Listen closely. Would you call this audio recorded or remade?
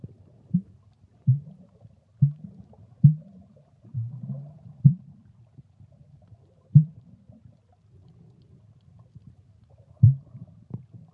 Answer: remade